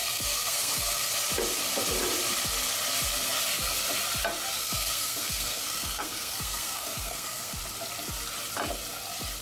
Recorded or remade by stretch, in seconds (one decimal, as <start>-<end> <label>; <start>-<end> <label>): 0.0-1.1 remade; 1.1-4.5 recorded; 4.5-7.6 remade; 7.6-9.4 recorded